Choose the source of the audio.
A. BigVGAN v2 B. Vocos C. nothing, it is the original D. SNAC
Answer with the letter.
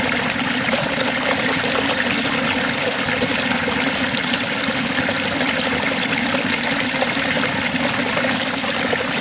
A